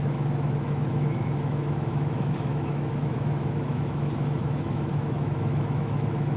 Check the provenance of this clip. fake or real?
fake